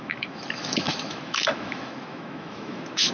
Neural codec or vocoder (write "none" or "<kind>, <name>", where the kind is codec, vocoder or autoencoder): autoencoder, DAC-VAE